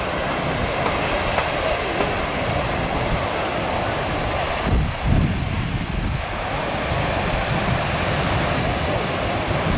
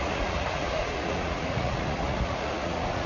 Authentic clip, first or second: first